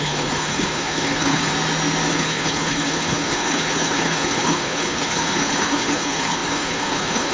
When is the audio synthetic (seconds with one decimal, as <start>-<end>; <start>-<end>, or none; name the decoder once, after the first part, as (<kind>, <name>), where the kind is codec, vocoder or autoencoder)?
0.0-1.5 (codec, HILCodec); 2.1-7.3